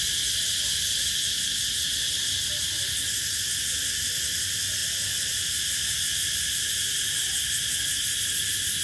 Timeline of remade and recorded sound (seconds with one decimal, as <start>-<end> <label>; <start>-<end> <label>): 0.0-8.8 recorded